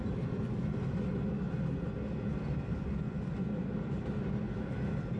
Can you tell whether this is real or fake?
real